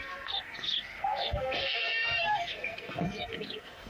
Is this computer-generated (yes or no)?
yes